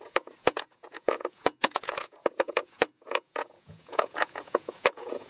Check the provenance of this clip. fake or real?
fake